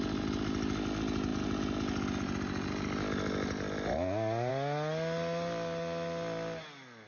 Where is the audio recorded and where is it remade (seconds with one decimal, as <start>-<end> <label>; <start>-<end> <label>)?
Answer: 0.0-7.1 recorded

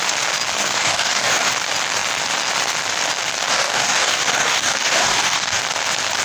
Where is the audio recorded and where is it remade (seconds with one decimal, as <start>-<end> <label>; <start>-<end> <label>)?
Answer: 0.0-0.6 recorded; 0.6-1.5 remade; 1.5-3.5 recorded; 3.5-5.6 remade; 5.6-6.2 recorded

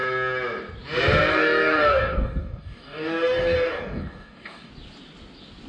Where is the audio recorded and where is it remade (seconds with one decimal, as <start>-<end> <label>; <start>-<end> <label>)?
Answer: 0.0-1.3 recorded; 1.3-4.7 remade; 4.7-5.7 recorded

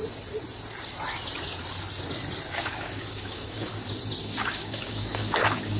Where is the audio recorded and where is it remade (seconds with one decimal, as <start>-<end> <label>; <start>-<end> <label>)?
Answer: 0.0-2.5 recorded; 2.5-3.7 remade; 3.7-4.2 recorded; 4.2-5.8 remade

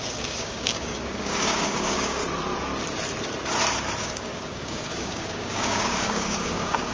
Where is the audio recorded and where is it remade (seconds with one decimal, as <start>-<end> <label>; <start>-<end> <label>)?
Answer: 0.0-2.2 remade; 2.2-4.0 recorded; 4.0-6.9 remade

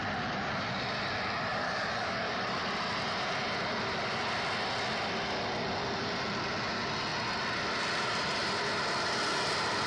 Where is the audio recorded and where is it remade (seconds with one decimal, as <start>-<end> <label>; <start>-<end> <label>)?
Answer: 0.0-1.5 recorded; 1.5-2.6 remade; 2.6-9.9 recorded

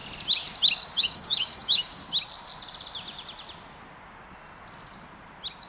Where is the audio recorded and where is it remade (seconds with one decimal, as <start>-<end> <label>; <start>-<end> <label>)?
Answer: 0.0-1.0 recorded; 1.0-2.0 remade; 2.0-5.7 recorded

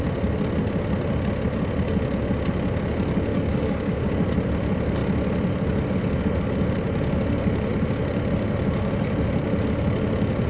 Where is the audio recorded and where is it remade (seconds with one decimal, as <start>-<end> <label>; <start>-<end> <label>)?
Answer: 0.0-3.3 recorded; 3.3-4.1 remade; 4.1-10.5 recorded